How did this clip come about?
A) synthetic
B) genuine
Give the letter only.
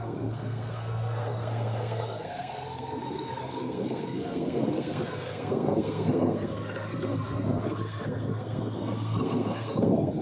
A